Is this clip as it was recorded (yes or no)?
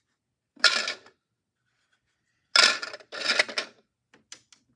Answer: yes